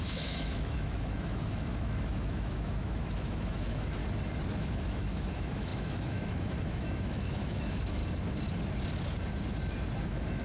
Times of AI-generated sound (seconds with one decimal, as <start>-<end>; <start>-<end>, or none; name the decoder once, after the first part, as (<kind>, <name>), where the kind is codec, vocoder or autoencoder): 0.0-4.0 (autoencoder, DAC-VAE); 4.6-8.0; 10.0-10.4